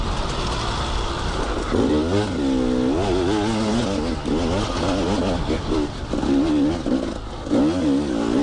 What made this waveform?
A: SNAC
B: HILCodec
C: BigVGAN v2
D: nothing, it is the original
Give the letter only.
D